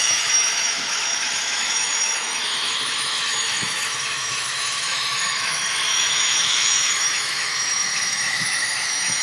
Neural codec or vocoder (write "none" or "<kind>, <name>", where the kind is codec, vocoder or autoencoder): autoencoder, DAC-VAE